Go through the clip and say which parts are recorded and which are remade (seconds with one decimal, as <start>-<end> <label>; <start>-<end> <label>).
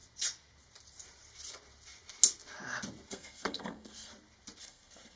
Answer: 0.0-3.1 recorded; 3.1-4.1 remade; 4.1-4.6 recorded; 4.6-5.2 remade